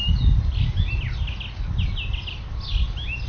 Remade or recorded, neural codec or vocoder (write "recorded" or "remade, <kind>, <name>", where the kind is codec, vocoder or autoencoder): recorded